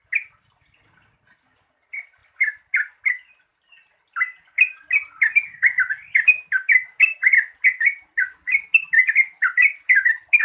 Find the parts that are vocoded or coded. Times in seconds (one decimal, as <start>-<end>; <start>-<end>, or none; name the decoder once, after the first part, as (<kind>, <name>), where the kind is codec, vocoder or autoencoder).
none